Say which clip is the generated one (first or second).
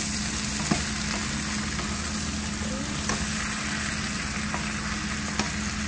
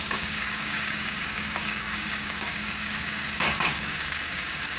second